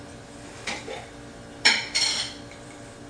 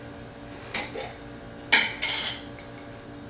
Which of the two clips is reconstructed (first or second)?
first